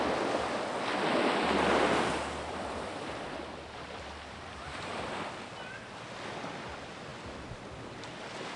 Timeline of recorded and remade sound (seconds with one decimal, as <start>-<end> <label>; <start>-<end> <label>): 0.0-8.6 recorded